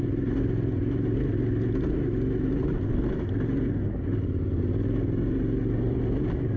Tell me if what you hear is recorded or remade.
recorded